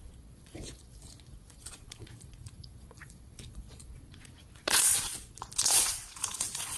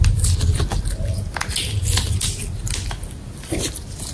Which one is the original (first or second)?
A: second